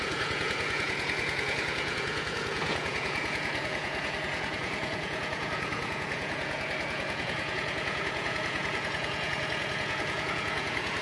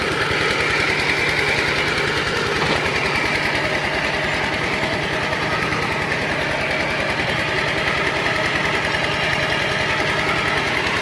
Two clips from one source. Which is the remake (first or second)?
first